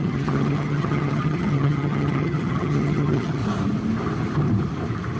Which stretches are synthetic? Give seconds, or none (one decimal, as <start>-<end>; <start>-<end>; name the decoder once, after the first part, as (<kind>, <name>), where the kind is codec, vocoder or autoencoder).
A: 0.0-3.4 (vocoder, HiFi-GAN)